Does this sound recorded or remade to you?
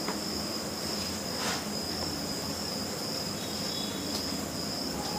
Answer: remade